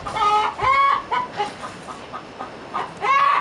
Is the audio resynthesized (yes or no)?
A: no